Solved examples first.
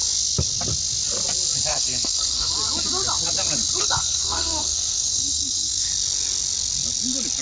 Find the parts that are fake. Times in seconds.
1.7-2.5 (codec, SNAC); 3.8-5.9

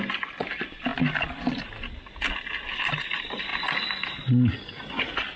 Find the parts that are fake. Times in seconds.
none

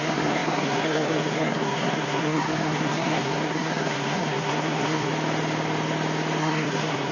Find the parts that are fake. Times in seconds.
0.0-5.1 (codec, SNAC); 6.4-7.1

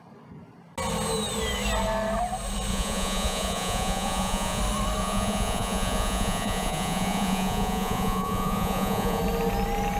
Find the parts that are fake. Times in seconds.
2.7-4.6 (vocoder, Vocos); 5.0-9.2